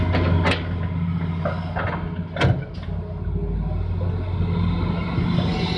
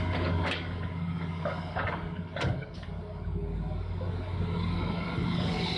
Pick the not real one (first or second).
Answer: second